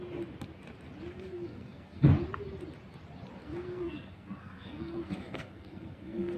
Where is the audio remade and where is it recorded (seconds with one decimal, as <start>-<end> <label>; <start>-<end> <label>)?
0.0-1.1 recorded; 1.1-2.1 remade; 2.1-3.4 recorded; 3.4-6.4 remade